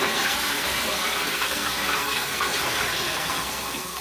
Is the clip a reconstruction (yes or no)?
yes